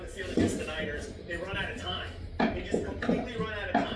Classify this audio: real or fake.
real